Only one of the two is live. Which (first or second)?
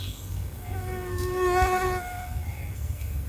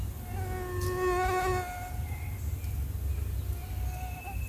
second